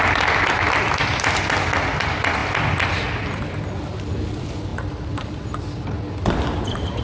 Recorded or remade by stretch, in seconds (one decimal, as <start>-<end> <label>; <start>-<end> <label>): 0.0-7.0 recorded